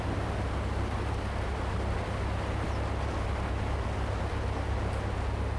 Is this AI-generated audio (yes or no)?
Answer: no